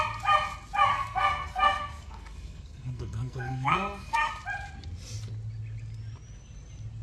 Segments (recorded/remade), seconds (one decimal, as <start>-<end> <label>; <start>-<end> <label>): 0.0-0.9 recorded; 0.9-4.3 remade; 4.3-7.0 recorded